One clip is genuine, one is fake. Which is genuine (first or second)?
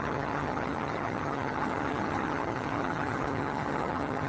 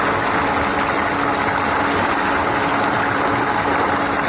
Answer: second